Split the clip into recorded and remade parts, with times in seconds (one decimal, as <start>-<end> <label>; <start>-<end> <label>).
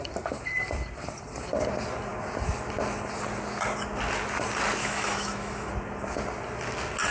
0.0-4.8 recorded; 4.8-5.7 remade; 5.7-7.1 recorded